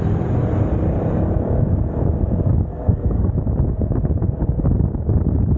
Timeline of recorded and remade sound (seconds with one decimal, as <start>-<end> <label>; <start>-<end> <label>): 0.0-2.7 recorded; 2.7-3.3 remade; 3.3-5.6 recorded